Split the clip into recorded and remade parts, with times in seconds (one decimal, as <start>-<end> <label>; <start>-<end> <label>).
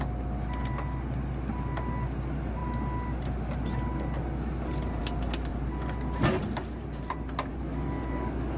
0.0-7.5 recorded; 7.5-8.6 remade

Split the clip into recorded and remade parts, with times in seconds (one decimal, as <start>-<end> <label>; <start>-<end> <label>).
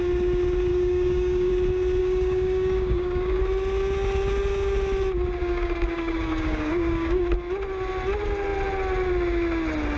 0.0-0.7 recorded; 0.7-1.5 remade; 1.5-2.0 recorded; 2.0-3.4 remade; 3.4-5.4 recorded; 5.4-7.2 remade; 7.2-10.0 recorded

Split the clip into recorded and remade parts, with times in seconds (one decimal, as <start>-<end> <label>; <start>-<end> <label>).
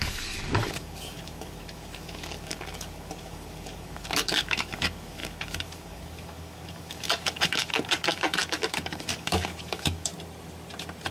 0.0-10.1 remade; 10.1-11.1 recorded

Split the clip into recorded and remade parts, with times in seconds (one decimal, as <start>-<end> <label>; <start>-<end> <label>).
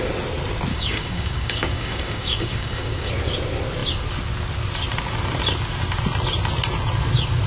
0.0-0.7 recorded; 0.7-3.1 remade; 3.1-7.5 recorded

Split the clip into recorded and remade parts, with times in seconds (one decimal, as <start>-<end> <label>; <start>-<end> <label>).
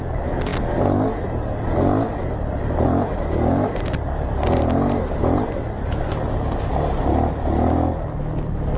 0.0-8.8 recorded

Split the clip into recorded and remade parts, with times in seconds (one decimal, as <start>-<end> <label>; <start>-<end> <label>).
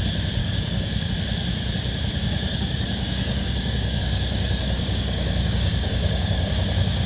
0.0-0.4 recorded; 0.4-1.1 remade; 1.1-2.2 recorded; 2.2-6.5 remade; 6.5-7.1 recorded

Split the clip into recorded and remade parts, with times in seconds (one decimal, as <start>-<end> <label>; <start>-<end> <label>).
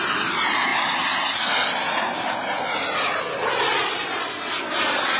0.0-5.2 recorded